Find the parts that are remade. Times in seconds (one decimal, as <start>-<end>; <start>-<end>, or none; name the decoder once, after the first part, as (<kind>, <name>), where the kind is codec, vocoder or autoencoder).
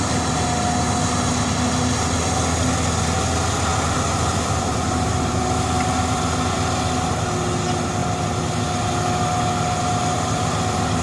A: 3.7-6.2 (vocoder, BigVGAN v2)